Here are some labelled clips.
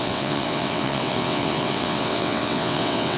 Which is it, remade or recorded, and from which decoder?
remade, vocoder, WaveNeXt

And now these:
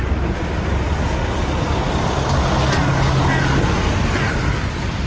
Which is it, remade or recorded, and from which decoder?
recorded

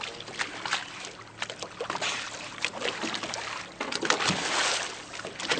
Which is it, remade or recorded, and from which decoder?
recorded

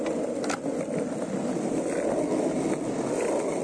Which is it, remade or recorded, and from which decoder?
recorded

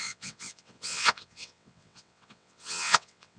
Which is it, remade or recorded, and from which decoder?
remade, vocoder, WaveNeXt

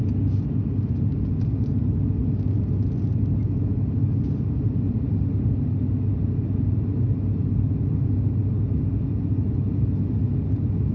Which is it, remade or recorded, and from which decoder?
recorded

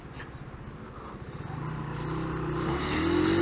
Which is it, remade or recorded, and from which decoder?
recorded